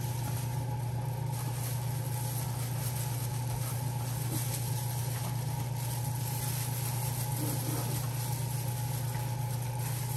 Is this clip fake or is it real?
real